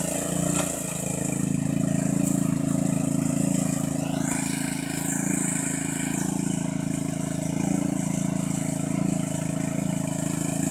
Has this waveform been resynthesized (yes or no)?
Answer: no